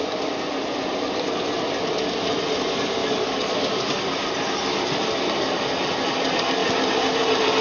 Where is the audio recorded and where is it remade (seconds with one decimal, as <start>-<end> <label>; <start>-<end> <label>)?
0.0-3.0 recorded; 3.0-4.0 remade; 4.0-7.6 recorded